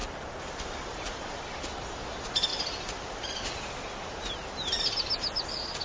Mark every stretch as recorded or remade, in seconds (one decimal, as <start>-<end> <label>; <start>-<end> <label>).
0.0-5.8 recorded